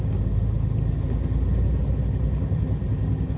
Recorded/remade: recorded